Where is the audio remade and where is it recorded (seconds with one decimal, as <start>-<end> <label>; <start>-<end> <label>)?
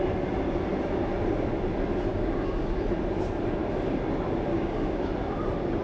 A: 0.0-2.1 recorded; 2.1-2.8 remade; 2.8-4.5 recorded; 4.5-5.1 remade; 5.1-5.8 recorded